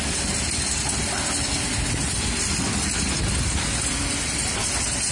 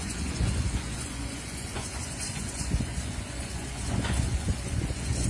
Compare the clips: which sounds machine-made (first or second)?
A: second